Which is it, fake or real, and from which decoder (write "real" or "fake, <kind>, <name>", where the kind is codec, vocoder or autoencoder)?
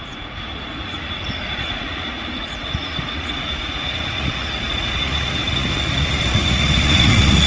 fake, vocoder, Vocos